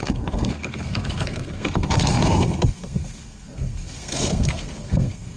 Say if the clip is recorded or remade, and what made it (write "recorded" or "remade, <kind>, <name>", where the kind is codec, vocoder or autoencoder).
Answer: remade, codec, SNAC